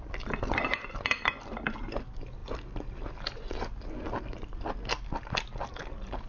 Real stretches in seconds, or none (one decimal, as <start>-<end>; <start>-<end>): 0.0-6.3